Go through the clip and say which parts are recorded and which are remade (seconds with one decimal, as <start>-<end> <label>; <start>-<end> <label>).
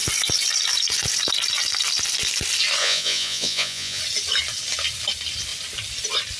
0.0-2.8 recorded; 2.8-4.0 remade; 4.0-6.4 recorded